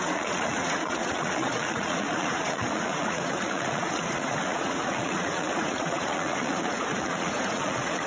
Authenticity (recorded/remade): remade